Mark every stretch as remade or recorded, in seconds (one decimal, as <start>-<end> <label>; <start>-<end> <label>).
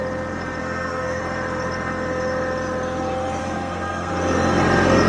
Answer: 0.0-0.6 recorded; 0.6-1.2 remade; 1.2-3.4 recorded; 3.4-4.1 remade; 4.1-5.1 recorded